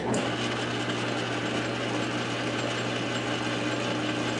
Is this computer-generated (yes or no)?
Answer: no